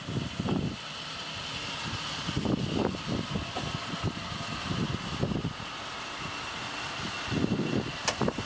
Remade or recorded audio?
recorded